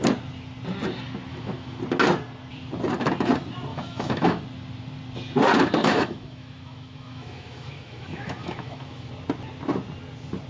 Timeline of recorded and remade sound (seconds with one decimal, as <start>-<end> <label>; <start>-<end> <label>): 0.0-1.3 recorded; 1.3-1.8 remade; 1.8-3.7 recorded; 3.7-4.4 remade; 4.4-5.8 recorded; 5.8-9.1 remade; 9.1-10.5 recorded